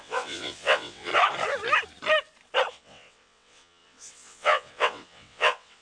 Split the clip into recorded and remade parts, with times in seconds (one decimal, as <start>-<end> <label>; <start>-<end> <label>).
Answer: 0.0-1.1 remade; 1.1-2.7 recorded; 2.7-5.8 remade